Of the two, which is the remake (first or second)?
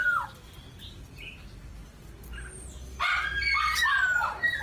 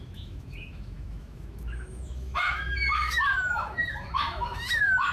second